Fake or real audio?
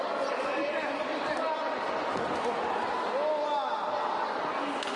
real